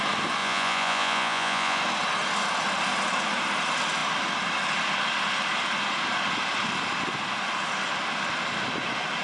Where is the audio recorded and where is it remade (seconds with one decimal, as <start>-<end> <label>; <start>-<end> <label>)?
0.0-0.4 recorded; 0.4-1.8 remade; 1.8-9.2 recorded